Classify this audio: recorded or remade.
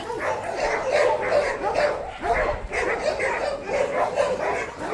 recorded